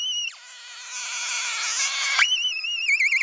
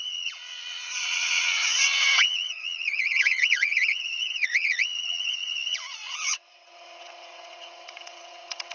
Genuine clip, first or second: first